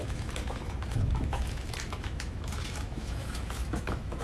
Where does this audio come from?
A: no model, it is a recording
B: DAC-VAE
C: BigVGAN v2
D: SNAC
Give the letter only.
B